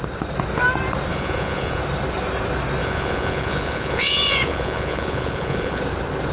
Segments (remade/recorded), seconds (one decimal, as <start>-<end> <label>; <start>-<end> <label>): 0.0-1.1 recorded; 1.1-1.8 remade; 1.8-2.8 recorded; 2.8-5.8 remade; 5.8-6.3 recorded